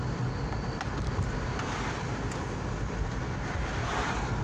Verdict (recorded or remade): recorded